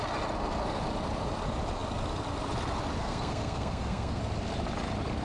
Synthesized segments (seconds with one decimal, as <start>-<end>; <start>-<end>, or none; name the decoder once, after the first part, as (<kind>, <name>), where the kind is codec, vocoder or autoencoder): 3.0-4.2 (codec, SNAC)